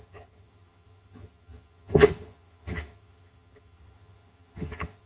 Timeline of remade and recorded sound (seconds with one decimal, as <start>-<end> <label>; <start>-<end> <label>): 0.0-5.1 remade